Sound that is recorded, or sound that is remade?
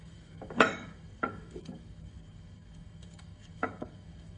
remade